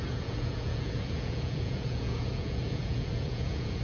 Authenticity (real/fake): fake